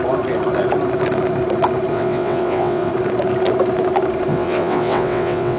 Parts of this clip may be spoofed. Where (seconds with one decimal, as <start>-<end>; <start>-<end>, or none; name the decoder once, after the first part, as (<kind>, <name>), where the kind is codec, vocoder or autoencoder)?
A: 1.9-2.9 (vocoder, WaveNeXt); 4.3-5.6